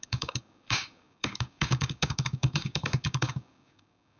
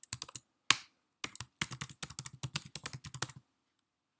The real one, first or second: second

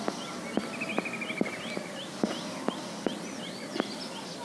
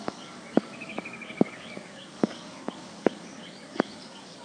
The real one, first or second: first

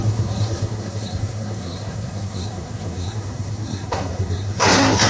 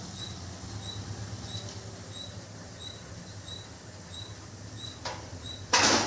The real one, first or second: second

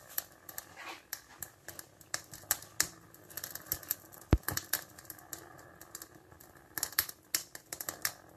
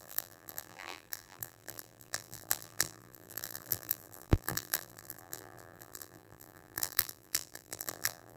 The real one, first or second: first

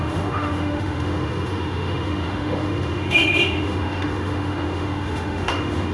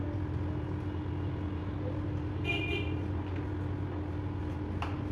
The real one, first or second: second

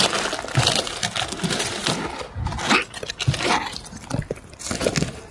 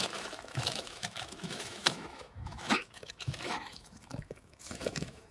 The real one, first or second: first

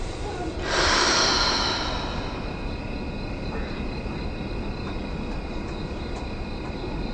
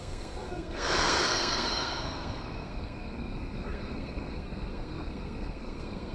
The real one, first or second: first